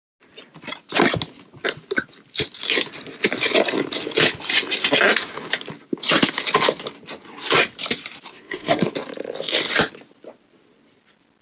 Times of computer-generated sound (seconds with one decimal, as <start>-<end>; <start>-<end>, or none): 8.3-8.9